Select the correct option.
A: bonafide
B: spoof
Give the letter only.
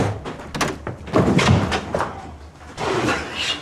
A